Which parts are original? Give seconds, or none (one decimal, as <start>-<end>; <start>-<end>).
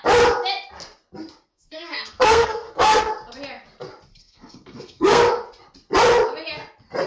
0.0-1.5; 3.0-4.2; 5.2-7.1